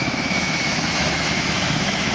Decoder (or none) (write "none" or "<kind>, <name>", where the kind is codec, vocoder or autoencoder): autoencoder, DAC-VAE